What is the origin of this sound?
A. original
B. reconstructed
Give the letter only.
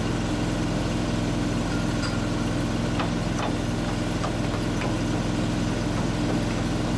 A